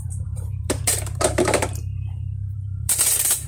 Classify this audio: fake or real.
fake